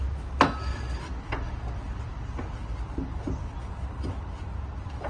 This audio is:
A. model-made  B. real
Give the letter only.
B